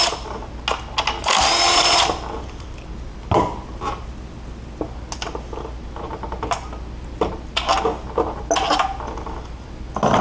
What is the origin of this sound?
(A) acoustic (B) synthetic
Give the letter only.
A